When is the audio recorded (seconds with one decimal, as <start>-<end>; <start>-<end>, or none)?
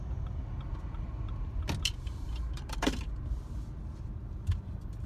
0.0-1.9; 3.0-5.1